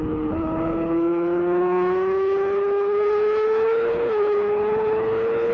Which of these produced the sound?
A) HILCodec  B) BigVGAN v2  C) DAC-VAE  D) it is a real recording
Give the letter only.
A